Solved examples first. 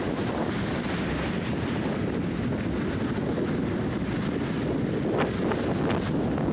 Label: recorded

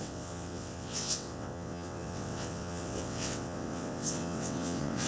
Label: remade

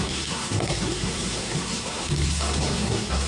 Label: remade